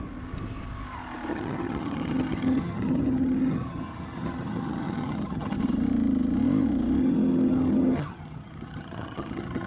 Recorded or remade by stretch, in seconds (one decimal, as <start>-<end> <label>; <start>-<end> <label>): 0.0-1.3 recorded; 1.3-5.6 remade; 5.6-7.0 recorded; 7.0-9.7 remade